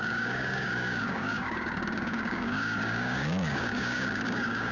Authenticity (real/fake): fake